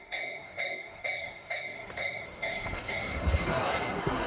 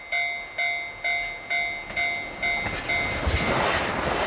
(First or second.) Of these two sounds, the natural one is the second